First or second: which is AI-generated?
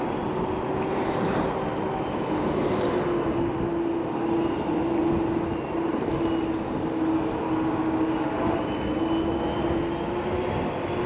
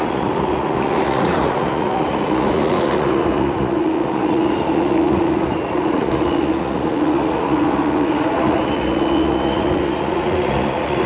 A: second